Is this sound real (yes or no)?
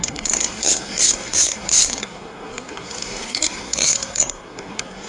no